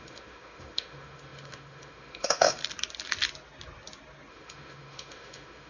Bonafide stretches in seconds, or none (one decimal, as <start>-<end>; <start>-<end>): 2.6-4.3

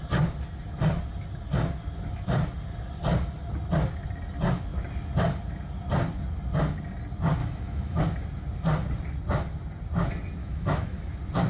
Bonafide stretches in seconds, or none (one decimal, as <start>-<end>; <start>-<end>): 0.0-7.4; 8.0-10.4; 11.1-11.5

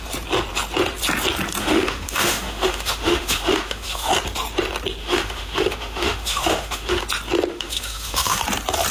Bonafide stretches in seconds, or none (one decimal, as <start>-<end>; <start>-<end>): 0.0-1.6; 4.1-5.0; 7.0-7.5; 8.4-8.9